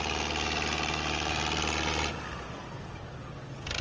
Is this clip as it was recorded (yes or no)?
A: yes